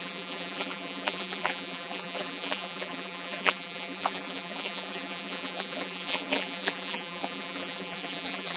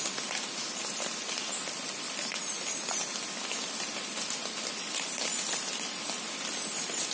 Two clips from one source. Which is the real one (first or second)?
second